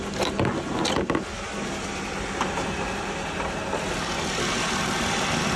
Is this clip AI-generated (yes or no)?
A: no